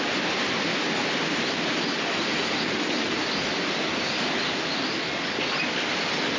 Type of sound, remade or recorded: recorded